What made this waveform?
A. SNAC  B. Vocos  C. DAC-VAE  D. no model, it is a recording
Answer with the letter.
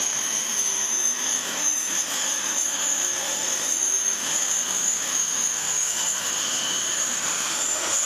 C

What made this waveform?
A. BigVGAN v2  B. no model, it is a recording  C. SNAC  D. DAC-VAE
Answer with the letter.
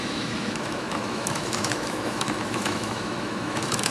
D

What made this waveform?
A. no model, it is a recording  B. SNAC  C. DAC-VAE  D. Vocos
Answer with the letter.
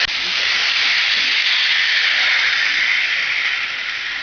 A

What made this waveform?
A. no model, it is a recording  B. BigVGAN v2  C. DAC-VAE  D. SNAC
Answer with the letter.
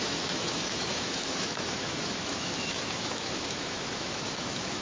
C